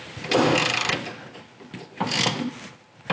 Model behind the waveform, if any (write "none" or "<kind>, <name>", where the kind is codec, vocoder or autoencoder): none